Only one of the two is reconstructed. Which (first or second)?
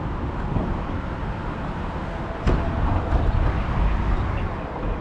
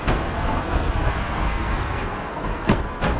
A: second